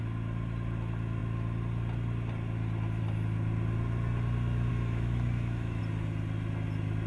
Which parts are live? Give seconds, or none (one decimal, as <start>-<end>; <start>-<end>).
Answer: 0.0-4.7; 5.8-7.1